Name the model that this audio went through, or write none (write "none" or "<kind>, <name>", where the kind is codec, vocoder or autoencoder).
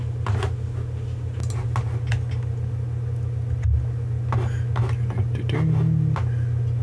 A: none